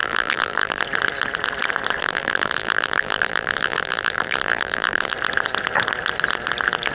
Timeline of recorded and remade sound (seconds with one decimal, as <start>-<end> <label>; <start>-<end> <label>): 0.0-0.8 remade; 0.8-2.0 recorded; 2.0-5.1 remade; 5.1-6.9 recorded